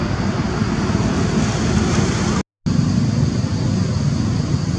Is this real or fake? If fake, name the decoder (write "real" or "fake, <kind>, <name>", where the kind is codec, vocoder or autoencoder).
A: real